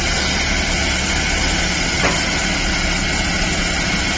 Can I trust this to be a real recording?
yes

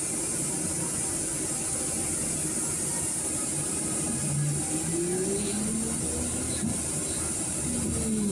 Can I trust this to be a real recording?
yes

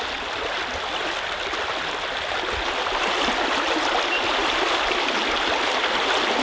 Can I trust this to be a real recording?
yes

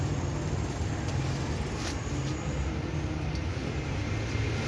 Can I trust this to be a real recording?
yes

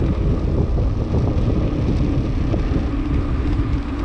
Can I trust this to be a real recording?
yes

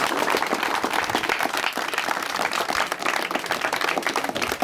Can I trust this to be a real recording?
yes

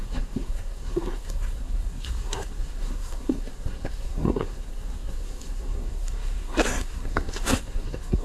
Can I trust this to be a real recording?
no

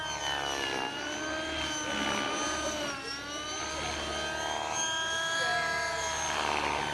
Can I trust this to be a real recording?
yes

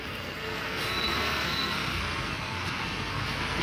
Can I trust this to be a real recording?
no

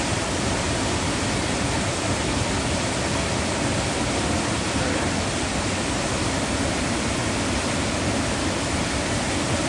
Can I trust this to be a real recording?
yes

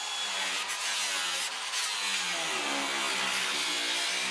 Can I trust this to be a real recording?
yes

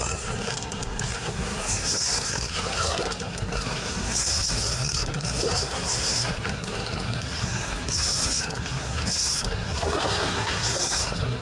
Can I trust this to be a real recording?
no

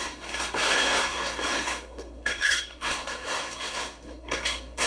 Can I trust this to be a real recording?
no